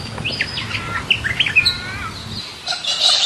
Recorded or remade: recorded